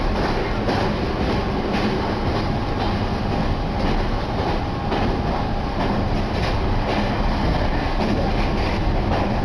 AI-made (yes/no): no